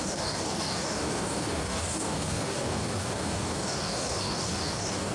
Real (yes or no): no